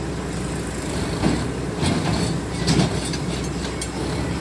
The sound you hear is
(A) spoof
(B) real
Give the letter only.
B